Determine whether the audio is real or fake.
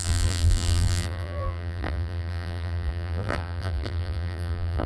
fake